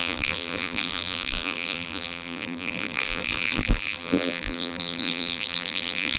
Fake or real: fake